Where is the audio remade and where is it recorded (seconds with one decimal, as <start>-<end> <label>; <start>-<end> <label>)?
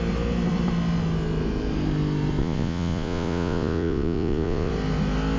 0.0-2.4 recorded; 2.4-4.7 remade; 4.7-5.4 recorded